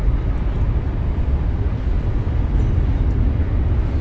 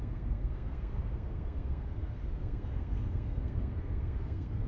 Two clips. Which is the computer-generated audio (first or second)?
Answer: second